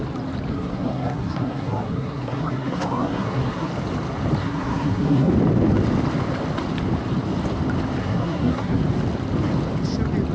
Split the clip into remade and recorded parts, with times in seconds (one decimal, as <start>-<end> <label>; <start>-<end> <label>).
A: 0.0-0.5 recorded; 0.5-3.7 remade; 3.7-4.4 recorded; 4.4-5.3 remade; 5.3-8.0 recorded; 8.0-8.8 remade; 8.8-10.3 recorded